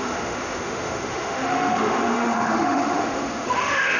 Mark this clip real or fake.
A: fake